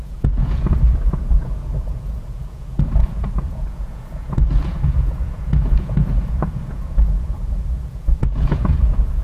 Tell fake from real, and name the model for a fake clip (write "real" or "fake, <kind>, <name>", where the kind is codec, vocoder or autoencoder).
fake, vocoder, Vocos